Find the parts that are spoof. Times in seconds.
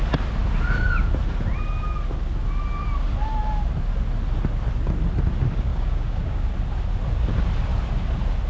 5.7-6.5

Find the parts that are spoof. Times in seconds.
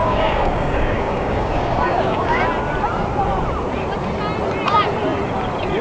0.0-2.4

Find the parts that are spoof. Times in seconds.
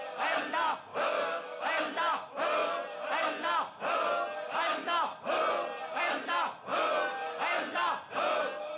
0.9-1.6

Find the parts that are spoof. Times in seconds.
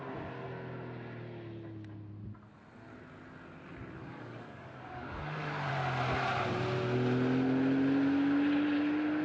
4.0-5.7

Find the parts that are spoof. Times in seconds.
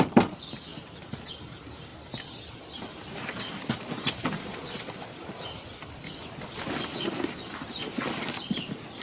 none